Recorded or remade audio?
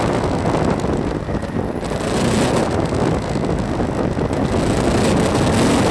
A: recorded